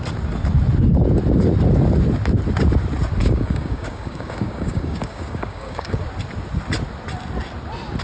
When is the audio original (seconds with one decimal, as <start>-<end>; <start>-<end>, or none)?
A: 0.0-3.2; 6.0-8.0